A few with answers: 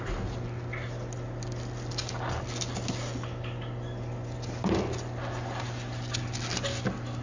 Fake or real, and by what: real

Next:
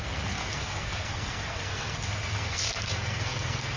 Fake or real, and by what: fake, codec, SNAC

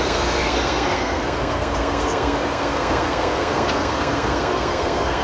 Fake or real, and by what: fake, codec, SNAC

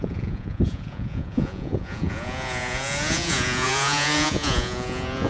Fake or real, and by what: fake, vocoder, Vocos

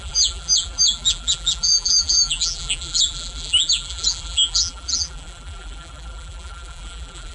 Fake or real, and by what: fake, vocoder, BigVGAN v2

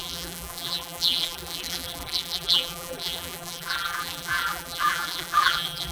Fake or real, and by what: fake, vocoder, BigVGAN v2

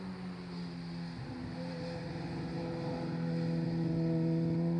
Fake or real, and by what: real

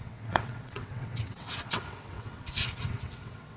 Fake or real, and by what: fake, vocoder, WaveNeXt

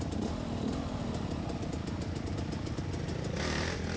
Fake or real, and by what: real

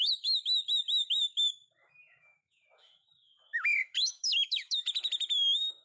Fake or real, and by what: fake, autoencoder, DAC-VAE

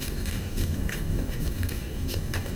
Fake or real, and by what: fake, codec, DAC